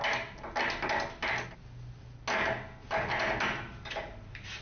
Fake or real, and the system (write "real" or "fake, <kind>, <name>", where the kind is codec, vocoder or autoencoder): real